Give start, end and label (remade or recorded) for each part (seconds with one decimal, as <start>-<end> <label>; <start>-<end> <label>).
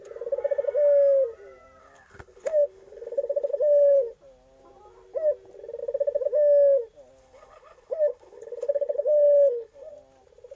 0.0-1.8 recorded; 1.8-4.0 remade; 4.0-7.2 recorded; 7.2-9.9 remade; 9.9-10.6 recorded